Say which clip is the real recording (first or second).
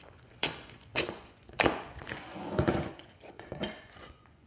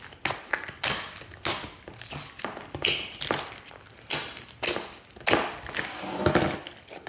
second